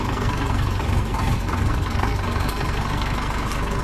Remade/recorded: remade